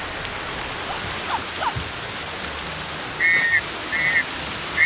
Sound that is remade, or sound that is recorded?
recorded